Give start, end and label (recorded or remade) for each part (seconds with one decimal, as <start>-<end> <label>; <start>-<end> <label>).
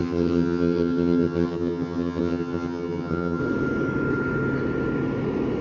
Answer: 0.0-3.4 remade; 3.4-5.6 recorded